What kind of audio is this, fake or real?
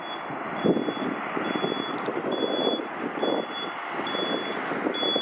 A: real